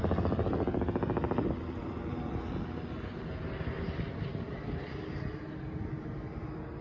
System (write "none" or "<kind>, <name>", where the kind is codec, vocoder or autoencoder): none